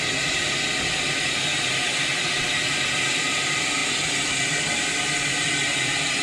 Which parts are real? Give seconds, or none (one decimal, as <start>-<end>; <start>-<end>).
0.0-6.2